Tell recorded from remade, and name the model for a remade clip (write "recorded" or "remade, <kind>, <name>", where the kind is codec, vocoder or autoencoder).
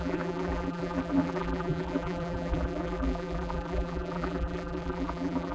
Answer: remade, vocoder, BigVGAN v2